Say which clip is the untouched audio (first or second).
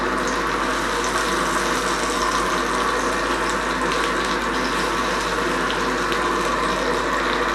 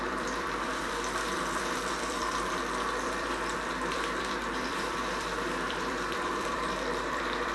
first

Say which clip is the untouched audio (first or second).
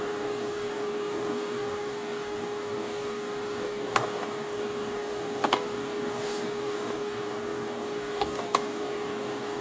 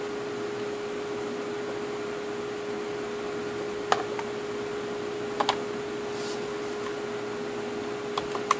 second